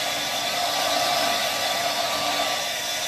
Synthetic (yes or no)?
yes